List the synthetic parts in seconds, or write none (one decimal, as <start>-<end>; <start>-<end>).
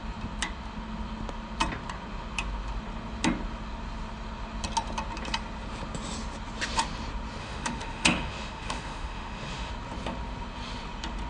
7.4-9.7